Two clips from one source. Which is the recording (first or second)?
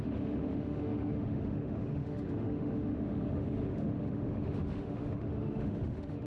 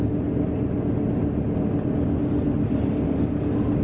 second